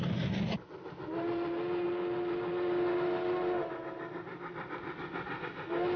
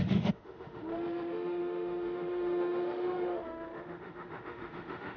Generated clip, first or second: second